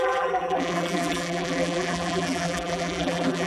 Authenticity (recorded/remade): remade